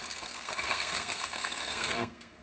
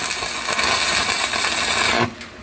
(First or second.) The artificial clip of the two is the first